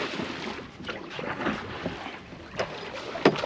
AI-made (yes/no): no